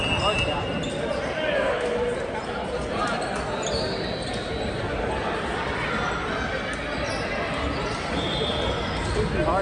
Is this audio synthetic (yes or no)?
no